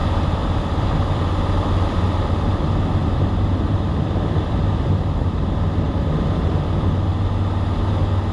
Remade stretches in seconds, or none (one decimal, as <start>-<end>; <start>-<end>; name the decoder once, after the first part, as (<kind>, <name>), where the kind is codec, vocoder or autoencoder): 0.0-2.3 (vocoder, BigVGAN v2); 3.0-5.5